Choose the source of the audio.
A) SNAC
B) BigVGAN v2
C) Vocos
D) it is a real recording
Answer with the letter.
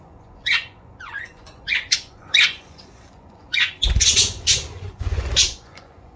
C